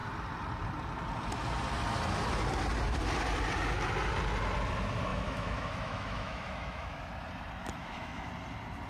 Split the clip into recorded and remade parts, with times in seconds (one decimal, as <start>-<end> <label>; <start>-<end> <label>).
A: 0.0-5.1 recorded; 5.1-7.0 remade; 7.0-7.6 recorded; 7.6-8.3 remade; 8.3-8.9 recorded